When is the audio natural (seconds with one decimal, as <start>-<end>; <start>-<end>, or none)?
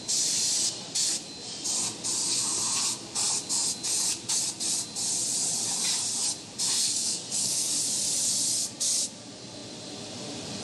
0.0-6.8; 7.7-10.6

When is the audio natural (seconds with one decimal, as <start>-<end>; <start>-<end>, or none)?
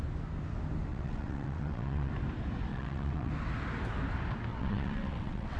0.0-0.9; 2.1-2.7; 3.3-4.5